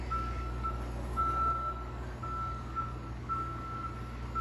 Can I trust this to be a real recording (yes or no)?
no